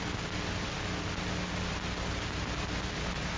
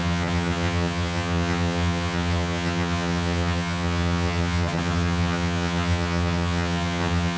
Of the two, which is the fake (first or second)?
second